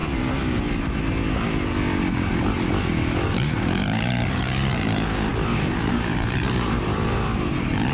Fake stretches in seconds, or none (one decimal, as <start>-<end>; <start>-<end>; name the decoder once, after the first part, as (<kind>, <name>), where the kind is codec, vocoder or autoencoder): 3.2-7.9 (vocoder, BigVGAN v2)